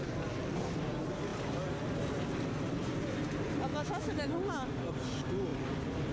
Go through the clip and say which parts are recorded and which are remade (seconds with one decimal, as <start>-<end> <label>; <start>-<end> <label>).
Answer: 0.0-3.7 recorded; 3.7-4.3 remade; 4.3-6.1 recorded

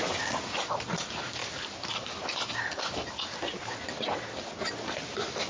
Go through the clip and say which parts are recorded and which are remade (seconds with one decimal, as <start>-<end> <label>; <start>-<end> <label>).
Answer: 0.0-5.5 recorded

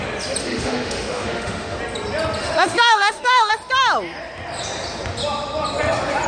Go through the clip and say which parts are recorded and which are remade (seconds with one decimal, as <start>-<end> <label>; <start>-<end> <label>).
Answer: 0.0-0.4 recorded; 0.4-1.8 remade; 1.8-2.4 recorded; 2.4-3.5 remade; 3.5-6.3 recorded

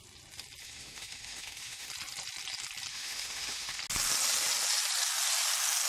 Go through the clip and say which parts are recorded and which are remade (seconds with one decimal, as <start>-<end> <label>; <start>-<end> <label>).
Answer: 0.0-0.6 recorded; 0.6-1.9 remade; 1.9-2.9 recorded; 2.9-3.8 remade; 3.8-5.9 recorded

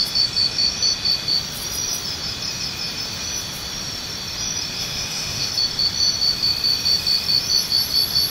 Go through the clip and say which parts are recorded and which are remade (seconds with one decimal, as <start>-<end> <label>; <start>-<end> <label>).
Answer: 0.0-4.8 recorded; 4.8-5.5 remade; 5.5-8.3 recorded

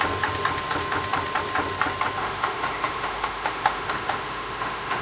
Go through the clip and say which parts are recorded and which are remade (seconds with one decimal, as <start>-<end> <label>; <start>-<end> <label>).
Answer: 0.0-2.2 recorded; 2.2-5.0 remade